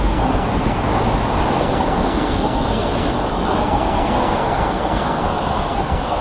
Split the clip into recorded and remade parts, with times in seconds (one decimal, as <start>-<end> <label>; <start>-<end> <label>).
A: 0.0-0.9 remade; 0.9-1.6 recorded; 1.6-6.2 remade